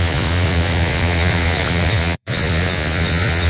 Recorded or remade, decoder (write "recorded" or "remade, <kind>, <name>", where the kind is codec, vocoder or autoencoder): remade, vocoder, Vocos